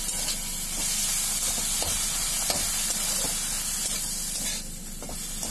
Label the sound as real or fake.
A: real